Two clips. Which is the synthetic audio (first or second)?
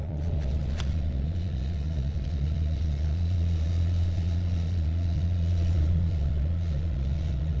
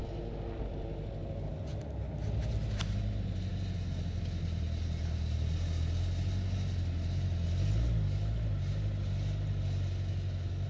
first